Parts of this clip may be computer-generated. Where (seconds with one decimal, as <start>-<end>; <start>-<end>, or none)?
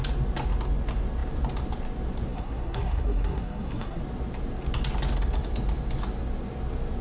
2.3-4.0